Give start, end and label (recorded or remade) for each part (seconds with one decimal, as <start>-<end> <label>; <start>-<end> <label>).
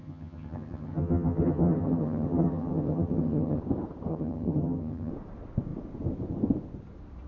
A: 0.0-3.6 remade; 3.6-4.1 recorded; 4.1-5.1 remade; 5.1-7.3 recorded